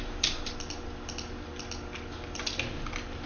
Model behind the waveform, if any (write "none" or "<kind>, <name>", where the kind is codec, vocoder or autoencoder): none